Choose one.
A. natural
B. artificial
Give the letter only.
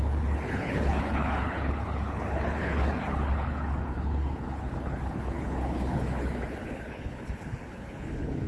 B